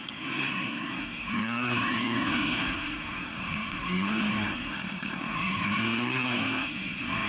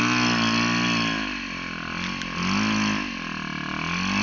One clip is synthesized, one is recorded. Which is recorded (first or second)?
second